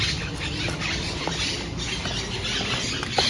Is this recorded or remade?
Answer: recorded